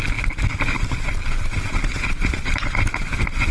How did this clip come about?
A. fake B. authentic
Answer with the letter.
B